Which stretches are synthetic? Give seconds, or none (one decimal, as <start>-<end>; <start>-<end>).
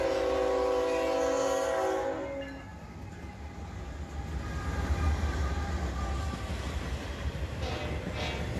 none